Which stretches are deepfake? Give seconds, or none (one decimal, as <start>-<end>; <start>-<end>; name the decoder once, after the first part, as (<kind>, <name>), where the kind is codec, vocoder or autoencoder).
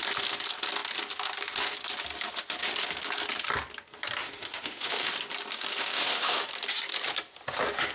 4.2-5.1 (autoencoder, DAC-VAE); 5.8-6.5